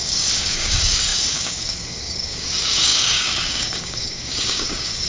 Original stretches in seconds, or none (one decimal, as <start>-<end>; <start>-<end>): none